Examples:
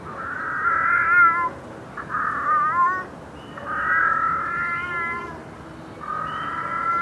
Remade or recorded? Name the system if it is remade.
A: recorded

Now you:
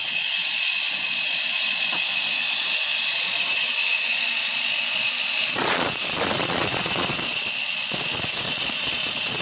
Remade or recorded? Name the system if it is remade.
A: remade, vocoder, Vocos